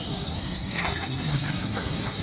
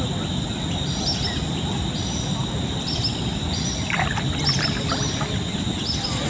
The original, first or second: second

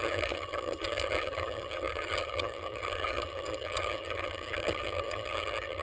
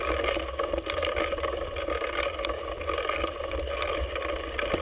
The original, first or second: second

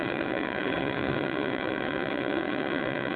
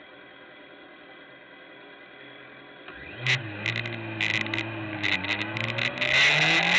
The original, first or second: second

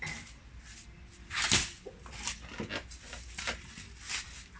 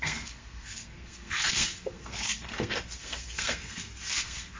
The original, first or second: first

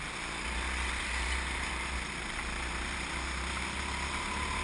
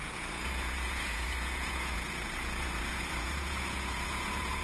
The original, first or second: first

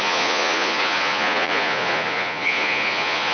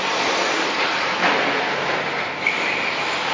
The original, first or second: second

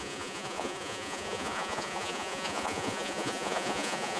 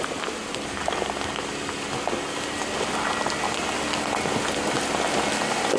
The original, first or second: second